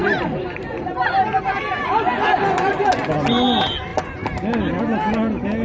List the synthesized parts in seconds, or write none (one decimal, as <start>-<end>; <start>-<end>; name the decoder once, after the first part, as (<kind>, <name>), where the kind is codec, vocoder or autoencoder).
none